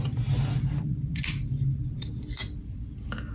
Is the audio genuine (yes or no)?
yes